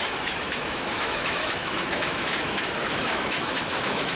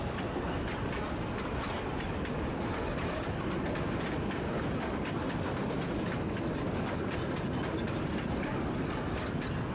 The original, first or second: second